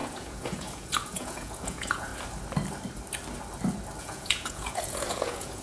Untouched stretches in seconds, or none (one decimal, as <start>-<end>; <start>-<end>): 2.1-4.0